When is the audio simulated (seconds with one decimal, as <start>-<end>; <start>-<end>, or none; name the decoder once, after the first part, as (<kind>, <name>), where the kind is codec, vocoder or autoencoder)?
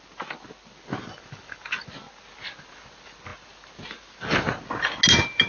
none